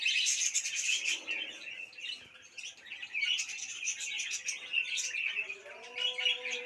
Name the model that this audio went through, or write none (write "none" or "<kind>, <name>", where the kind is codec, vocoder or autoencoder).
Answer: none